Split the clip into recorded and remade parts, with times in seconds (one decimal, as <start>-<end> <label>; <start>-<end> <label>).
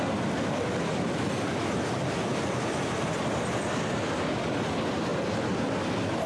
0.0-6.3 recorded